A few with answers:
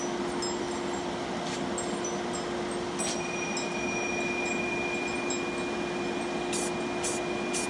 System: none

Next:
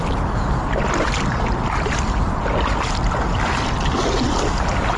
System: none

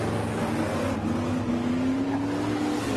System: none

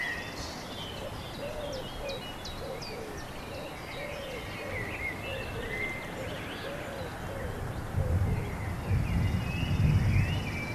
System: none